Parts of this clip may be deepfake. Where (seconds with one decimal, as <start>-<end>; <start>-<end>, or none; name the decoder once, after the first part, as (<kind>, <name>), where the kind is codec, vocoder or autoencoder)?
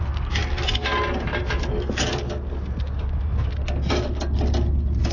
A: none